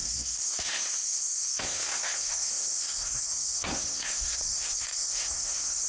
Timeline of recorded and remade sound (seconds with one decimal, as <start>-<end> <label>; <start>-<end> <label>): 0.0-5.9 remade